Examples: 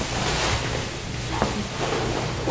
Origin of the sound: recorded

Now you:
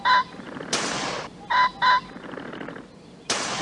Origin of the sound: recorded